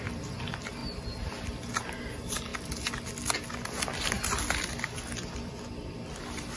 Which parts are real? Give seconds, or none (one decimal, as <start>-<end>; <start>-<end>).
0.0-6.6